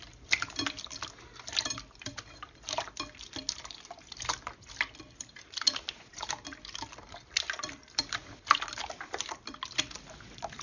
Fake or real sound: real